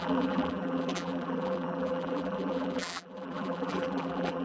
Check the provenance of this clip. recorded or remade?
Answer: remade